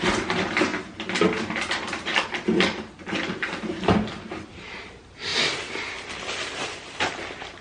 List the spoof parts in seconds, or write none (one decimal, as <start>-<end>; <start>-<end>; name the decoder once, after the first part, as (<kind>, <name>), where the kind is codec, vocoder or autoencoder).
0.0-0.7 (vocoder, BigVGAN v2); 1.4-2.1; 3.6-5.3